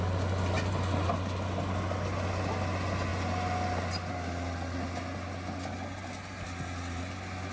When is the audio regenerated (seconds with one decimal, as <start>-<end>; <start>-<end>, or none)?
none